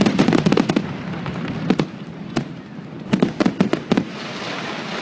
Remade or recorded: recorded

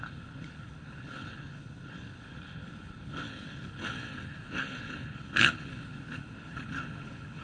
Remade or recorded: remade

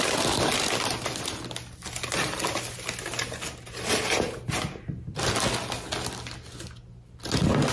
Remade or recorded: recorded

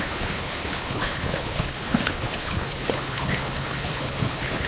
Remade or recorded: remade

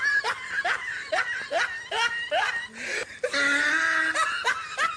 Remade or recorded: recorded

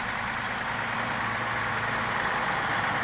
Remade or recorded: recorded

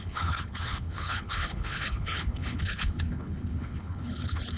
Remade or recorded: remade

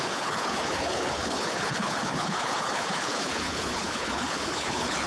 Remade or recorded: remade